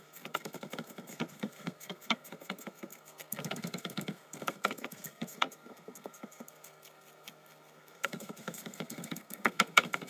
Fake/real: fake